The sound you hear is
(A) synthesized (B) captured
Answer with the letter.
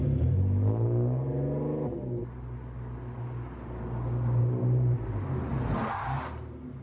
B